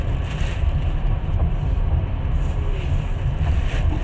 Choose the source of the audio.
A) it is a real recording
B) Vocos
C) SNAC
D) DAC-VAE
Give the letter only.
A